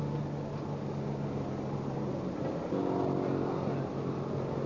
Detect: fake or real real